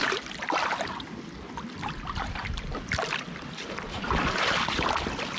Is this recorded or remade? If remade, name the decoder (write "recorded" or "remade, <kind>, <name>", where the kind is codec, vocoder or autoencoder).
recorded